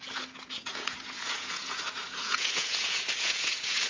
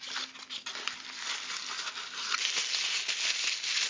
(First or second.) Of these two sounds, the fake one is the first